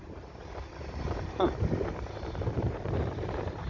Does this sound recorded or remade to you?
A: remade